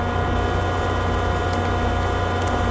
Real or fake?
real